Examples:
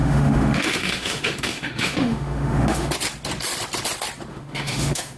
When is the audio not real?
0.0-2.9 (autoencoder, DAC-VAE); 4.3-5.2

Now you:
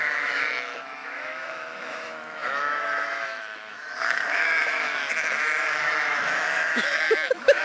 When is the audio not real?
0.0-7.6 (autoencoder, DAC-VAE)

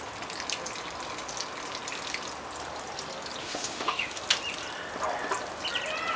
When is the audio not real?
3.4-4.2 (autoencoder, DAC-VAE)